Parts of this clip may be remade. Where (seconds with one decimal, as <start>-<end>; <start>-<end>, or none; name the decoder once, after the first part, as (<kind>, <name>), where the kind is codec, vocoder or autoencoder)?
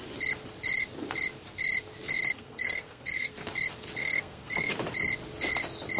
2.3-3.4 (codec, SNAC); 4.0-4.7